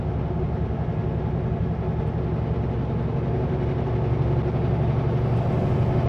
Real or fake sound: real